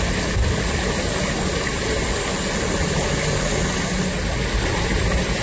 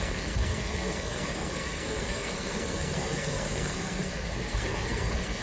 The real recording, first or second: first